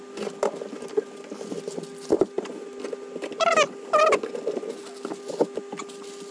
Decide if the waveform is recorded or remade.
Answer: recorded